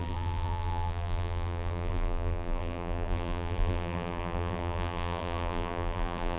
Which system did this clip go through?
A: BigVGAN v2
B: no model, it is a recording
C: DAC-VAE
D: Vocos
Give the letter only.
A